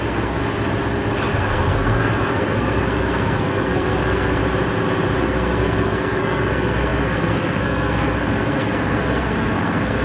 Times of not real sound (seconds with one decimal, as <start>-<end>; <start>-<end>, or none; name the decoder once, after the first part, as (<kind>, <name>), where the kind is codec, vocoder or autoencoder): 0.0-0.4 (codec, SNAC); 1.3-4.4; 5.2-10.0